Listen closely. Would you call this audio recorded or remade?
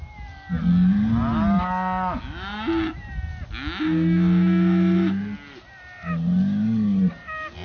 recorded